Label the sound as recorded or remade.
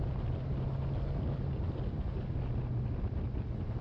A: recorded